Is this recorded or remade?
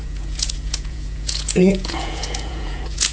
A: remade